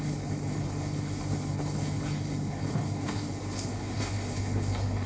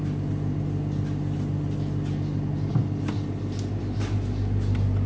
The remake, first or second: first